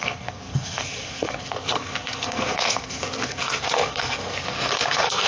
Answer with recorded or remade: remade